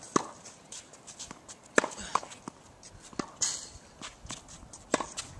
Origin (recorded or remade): recorded